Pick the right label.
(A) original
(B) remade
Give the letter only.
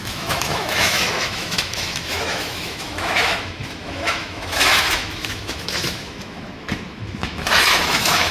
B